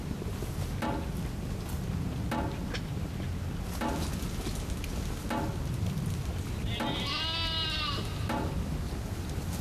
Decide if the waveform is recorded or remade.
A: recorded